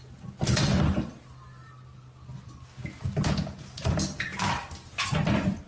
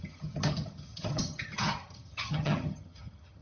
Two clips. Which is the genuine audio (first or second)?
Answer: first